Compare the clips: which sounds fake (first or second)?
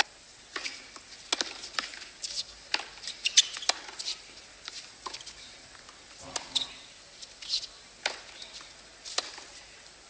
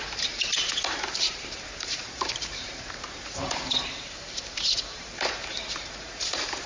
second